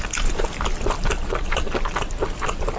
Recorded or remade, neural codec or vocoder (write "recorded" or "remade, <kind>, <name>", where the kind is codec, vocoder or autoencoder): recorded